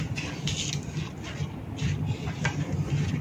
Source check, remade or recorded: recorded